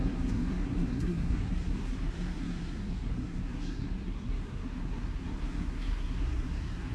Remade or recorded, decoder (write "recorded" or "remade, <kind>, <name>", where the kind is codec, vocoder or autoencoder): remade, codec, SNAC